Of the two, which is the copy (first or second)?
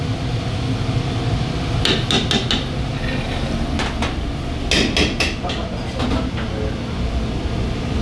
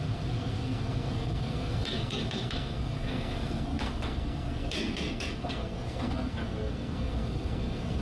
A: second